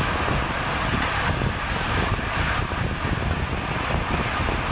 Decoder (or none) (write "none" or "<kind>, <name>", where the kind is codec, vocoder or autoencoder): none